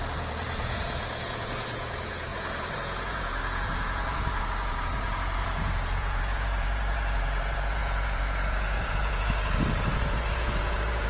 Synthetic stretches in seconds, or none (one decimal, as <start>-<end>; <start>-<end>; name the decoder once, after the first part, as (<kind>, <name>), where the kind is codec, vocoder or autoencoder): 0.0-11.1 (vocoder, Vocos)